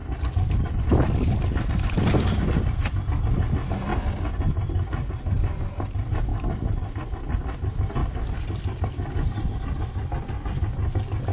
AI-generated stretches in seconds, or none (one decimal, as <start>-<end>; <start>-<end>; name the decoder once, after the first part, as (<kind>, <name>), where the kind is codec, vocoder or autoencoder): none